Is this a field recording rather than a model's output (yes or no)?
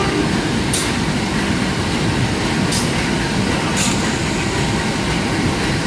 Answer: yes